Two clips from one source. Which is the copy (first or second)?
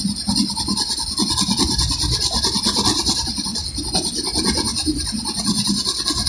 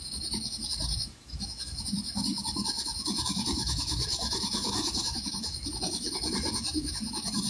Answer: second